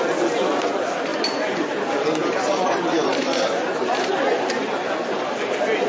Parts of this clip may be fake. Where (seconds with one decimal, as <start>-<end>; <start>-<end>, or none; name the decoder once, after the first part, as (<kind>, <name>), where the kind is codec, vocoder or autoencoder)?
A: 2.2-4.1 (vocoder, BigVGAN v2)